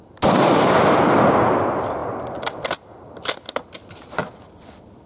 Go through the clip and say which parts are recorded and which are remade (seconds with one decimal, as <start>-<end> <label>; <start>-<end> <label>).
0.0-5.1 recorded

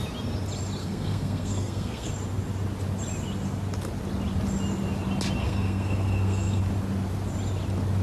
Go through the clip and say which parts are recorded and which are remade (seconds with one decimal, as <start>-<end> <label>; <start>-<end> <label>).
0.0-0.8 recorded; 0.8-2.1 remade; 2.1-5.4 recorded; 5.4-6.6 remade; 6.6-8.0 recorded

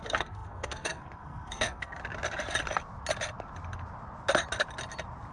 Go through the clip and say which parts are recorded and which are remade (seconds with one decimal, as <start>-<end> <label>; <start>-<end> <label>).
0.0-2.0 remade; 2.0-5.3 recorded

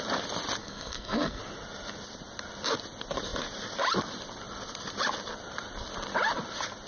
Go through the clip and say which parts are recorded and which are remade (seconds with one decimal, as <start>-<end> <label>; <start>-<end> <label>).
0.0-0.6 recorded; 0.6-1.4 remade; 1.4-6.9 recorded

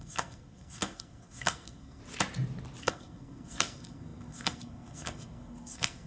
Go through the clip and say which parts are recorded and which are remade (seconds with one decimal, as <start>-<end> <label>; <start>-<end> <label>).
0.0-2.0 remade; 2.0-2.8 recorded; 2.8-6.1 remade